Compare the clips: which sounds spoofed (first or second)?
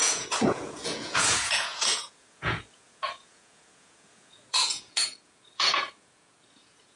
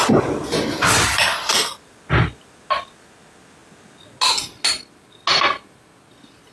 first